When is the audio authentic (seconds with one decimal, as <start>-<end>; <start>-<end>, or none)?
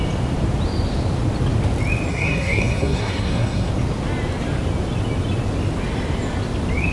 0.0-2.1; 3.7-6.9